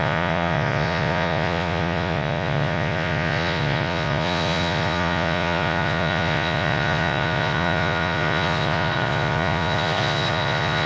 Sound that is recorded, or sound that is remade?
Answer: remade